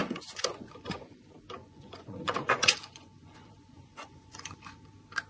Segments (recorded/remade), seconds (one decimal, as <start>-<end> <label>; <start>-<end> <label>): 0.0-1.2 remade; 1.2-1.6 recorded; 1.6-4.8 remade; 4.8-5.3 recorded